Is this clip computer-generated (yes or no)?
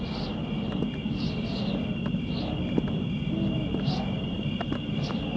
no